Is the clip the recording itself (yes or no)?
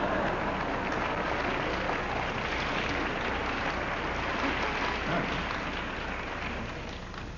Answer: yes